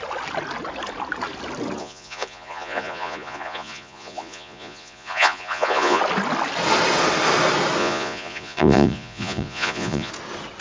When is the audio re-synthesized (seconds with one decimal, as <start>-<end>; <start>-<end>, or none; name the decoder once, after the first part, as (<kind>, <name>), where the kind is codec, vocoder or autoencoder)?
1.8-6.0 (vocoder, Vocos); 7.8-10.1